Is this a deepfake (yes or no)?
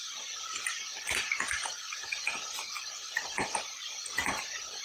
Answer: yes